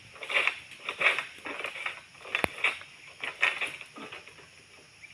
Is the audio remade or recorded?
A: recorded